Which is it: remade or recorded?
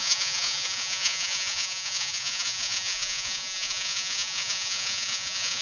remade